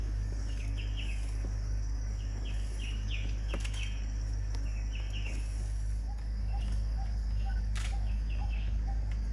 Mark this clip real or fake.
fake